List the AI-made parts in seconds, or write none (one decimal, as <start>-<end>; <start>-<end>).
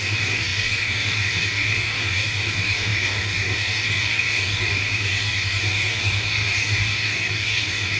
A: 0.0-8.0